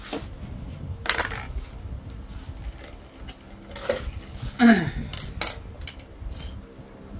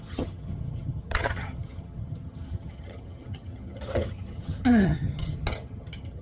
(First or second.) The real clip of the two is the first